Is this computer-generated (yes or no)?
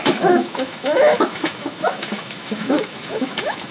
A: yes